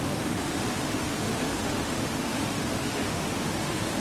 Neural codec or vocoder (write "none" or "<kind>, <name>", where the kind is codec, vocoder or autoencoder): autoencoder, DAC-VAE